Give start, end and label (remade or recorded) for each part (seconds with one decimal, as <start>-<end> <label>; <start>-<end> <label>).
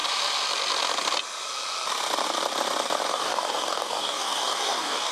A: 0.0-3.1 recorded; 3.1-5.1 remade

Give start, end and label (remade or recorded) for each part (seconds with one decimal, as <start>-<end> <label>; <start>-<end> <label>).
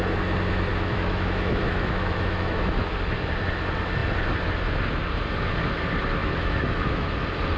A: 0.0-0.7 recorded; 0.7-2.9 remade; 2.9-6.2 recorded; 6.2-7.1 remade; 7.1-7.6 recorded